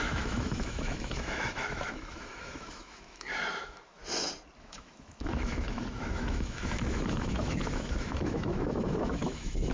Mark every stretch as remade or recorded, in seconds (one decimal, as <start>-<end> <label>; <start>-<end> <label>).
0.0-4.0 remade; 4.0-4.6 recorded; 4.6-9.7 remade